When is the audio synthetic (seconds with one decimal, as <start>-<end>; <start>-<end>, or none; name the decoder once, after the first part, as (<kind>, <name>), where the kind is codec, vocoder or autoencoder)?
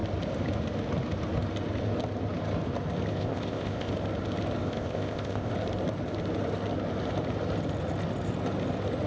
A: 3.1-3.9 (codec, ZipCodec); 4.6-5.5